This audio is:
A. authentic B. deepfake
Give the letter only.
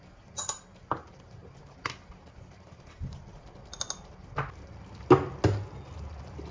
A